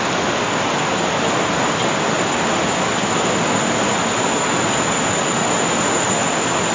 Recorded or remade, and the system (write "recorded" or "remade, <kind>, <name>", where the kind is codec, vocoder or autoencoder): recorded